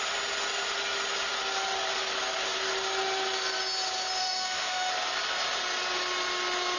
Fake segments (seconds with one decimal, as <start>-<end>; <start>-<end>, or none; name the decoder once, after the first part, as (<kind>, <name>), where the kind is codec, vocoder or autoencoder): 4.2-4.9 (autoencoder, DAC-VAE)